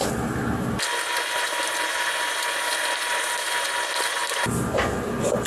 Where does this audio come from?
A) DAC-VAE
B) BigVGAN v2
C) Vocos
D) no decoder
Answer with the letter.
D